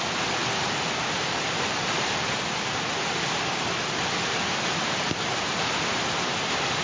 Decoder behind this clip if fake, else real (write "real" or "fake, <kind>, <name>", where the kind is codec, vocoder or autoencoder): real